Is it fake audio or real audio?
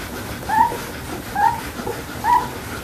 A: real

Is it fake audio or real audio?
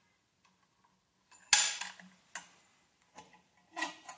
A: real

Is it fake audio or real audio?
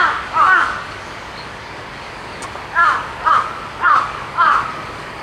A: fake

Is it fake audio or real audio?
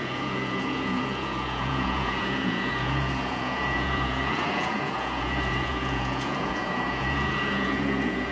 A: fake